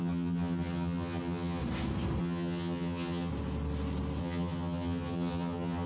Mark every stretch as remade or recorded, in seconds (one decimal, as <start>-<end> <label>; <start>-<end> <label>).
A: 0.0-1.6 remade; 1.6-2.2 recorded; 2.2-3.3 remade; 3.3-4.2 recorded; 4.2-5.9 remade